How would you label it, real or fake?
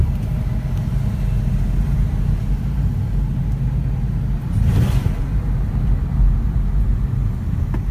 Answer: real